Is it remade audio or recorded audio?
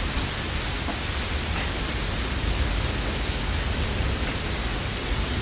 recorded